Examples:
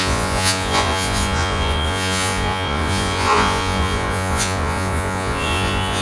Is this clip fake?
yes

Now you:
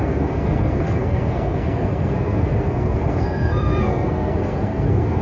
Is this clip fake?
yes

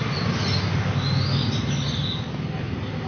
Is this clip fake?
no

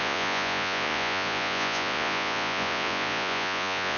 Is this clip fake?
yes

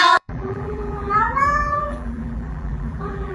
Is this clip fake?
yes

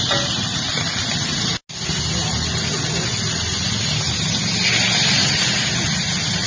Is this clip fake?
no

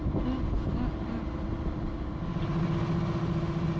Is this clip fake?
no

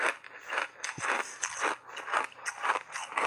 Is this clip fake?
no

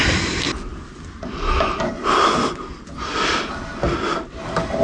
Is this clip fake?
no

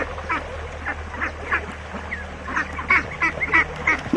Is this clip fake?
no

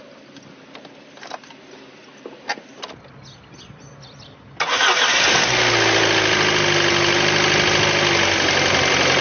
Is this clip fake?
no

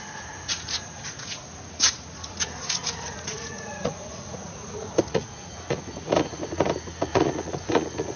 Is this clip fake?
yes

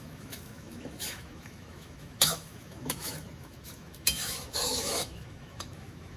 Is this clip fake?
yes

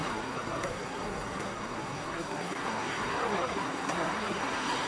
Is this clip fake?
yes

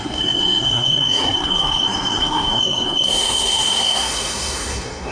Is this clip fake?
yes